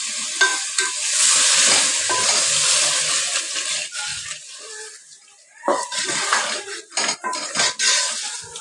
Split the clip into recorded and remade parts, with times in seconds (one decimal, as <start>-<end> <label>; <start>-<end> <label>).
0.0-0.5 recorded; 0.5-1.6 remade; 1.6-4.1 recorded; 4.1-7.6 remade; 7.6-8.6 recorded

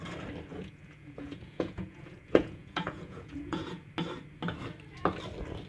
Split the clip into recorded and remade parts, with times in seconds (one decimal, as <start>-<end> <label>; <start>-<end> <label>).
0.0-0.5 recorded; 0.5-3.9 remade; 3.9-5.7 recorded

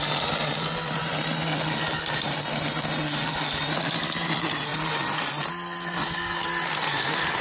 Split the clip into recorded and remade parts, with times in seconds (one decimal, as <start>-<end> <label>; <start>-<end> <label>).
0.0-4.7 recorded; 4.7-5.3 remade; 5.3-7.4 recorded

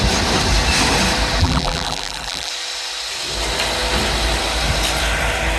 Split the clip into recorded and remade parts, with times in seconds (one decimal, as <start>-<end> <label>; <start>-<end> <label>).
0.0-1.4 recorded; 1.4-2.5 remade; 2.5-5.6 recorded

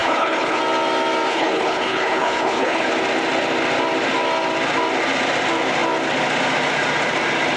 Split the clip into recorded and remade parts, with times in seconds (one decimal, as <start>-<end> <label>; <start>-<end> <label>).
0.0-0.6 remade; 0.6-1.3 recorded; 1.3-2.9 remade; 2.9-7.6 recorded